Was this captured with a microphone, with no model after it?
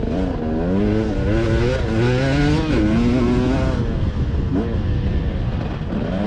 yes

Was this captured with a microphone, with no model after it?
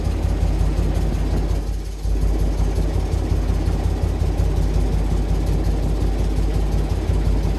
yes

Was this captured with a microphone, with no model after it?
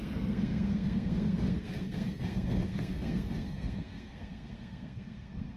no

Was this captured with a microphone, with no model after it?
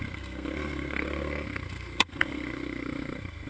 no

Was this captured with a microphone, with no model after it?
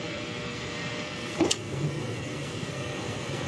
no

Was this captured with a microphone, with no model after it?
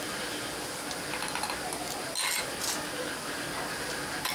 yes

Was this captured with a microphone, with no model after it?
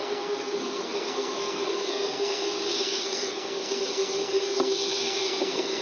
no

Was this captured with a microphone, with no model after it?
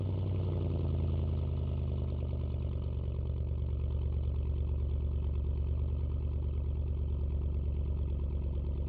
yes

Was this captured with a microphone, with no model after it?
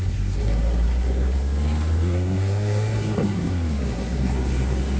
no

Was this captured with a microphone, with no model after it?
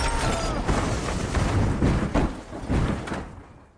yes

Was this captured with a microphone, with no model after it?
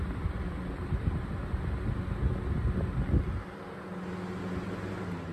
yes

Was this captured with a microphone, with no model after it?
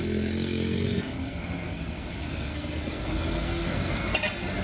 no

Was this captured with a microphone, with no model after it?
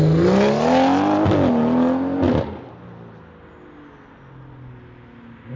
yes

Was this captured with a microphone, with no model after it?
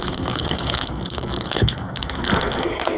no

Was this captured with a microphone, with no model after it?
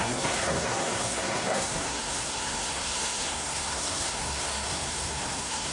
no